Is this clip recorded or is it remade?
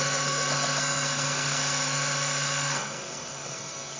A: remade